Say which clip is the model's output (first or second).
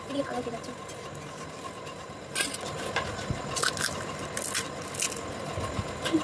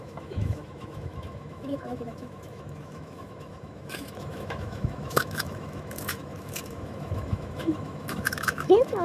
second